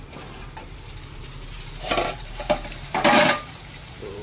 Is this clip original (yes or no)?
no